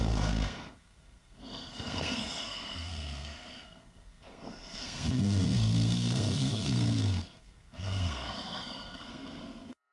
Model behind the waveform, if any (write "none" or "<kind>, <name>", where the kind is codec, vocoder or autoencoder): codec, SNAC